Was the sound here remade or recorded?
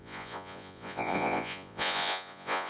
remade